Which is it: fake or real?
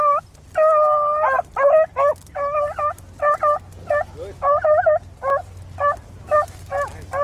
real